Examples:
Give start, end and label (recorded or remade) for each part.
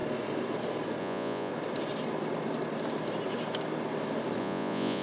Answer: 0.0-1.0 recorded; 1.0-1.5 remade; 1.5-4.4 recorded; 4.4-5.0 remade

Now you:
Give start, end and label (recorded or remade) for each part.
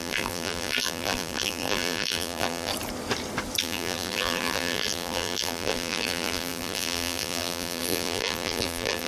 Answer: 0.0-2.7 remade; 2.7-3.6 recorded; 3.6-9.1 remade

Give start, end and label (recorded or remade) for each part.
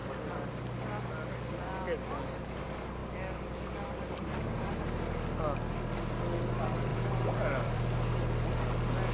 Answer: 0.0-6.9 recorded; 6.9-7.8 remade; 7.8-9.1 recorded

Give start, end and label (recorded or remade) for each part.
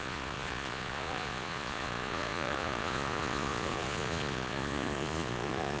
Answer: 0.0-5.8 remade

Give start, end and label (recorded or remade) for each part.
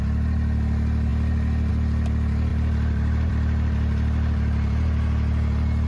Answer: 0.0-5.9 recorded